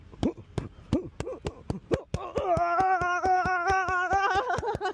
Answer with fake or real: real